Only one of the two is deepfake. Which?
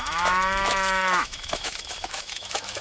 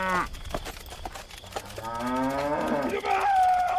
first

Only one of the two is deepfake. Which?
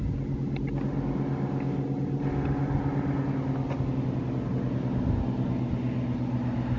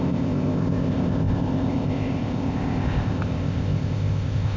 second